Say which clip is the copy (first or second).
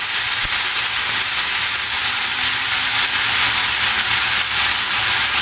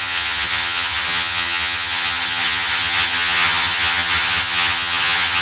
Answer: second